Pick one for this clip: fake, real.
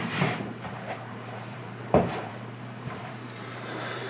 fake